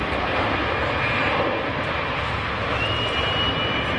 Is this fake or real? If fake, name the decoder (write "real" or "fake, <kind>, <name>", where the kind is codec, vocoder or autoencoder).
real